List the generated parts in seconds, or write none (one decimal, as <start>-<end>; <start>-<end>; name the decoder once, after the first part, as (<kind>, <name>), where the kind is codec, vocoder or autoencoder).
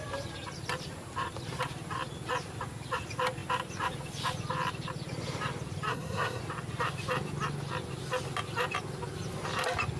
5.9-6.4 (codec, SNAC)